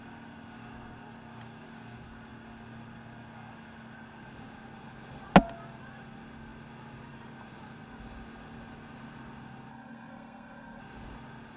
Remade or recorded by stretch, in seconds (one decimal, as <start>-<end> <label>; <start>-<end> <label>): 0.0-9.7 recorded; 9.7-10.8 remade; 10.8-11.6 recorded